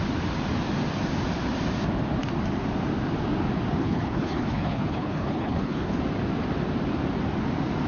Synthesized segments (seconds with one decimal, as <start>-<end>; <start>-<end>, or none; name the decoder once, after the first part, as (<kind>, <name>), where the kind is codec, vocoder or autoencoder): 3.8-6.0 (codec, HILCodec)